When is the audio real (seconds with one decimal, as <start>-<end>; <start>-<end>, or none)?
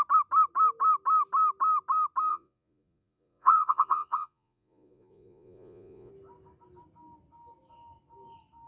0.0-2.3; 6.1-8.7